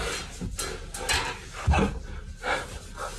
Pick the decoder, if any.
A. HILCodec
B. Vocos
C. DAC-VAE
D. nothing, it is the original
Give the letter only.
D